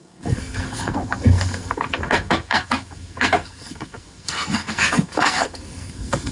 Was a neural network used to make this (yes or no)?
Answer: yes